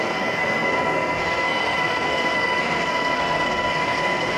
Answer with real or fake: fake